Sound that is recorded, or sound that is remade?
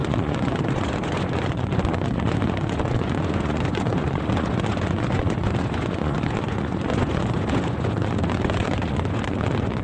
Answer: remade